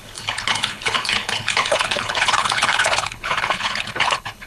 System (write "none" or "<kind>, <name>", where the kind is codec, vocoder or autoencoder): codec, HILCodec